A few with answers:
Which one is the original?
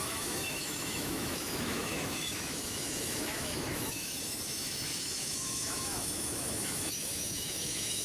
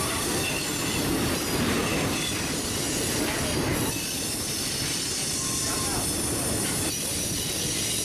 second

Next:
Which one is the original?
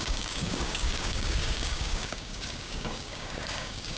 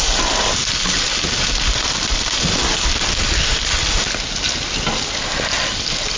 second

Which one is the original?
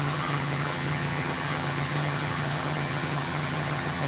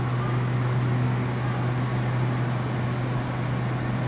second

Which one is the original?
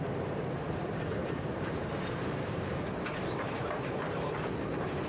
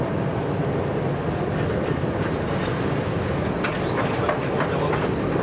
second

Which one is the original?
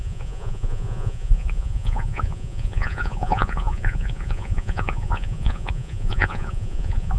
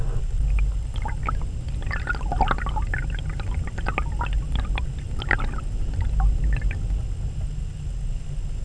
second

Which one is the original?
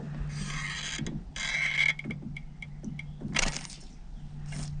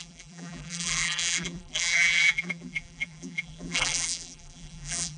first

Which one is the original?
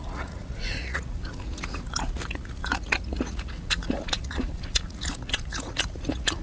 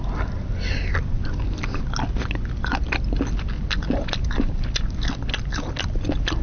second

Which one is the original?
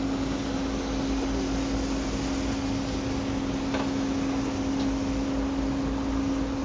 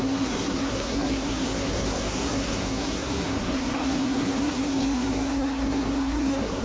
first